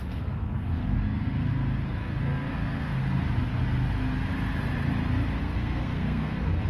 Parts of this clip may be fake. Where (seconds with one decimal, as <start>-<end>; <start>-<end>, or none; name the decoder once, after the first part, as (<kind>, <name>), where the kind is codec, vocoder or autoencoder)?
0.0-1.5 (codec, SNAC); 2.2-3.0; 5.4-6.7